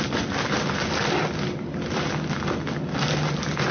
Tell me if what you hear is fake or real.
real